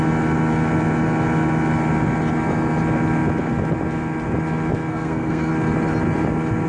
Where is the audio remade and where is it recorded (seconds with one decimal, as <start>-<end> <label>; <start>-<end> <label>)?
0.0-4.9 recorded; 4.9-5.5 remade; 5.5-6.7 recorded